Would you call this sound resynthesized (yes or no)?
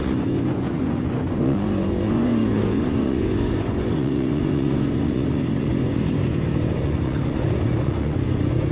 yes